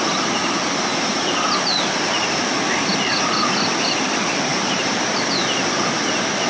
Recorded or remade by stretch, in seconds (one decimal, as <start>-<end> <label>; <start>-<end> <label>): 0.0-0.4 recorded; 0.4-1.4 remade; 1.4-4.5 recorded; 4.5-5.2 remade; 5.2-6.5 recorded